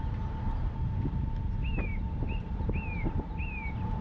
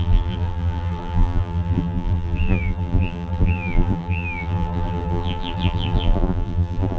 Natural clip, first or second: first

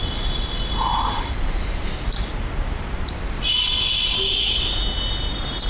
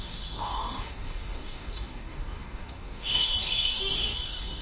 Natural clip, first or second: first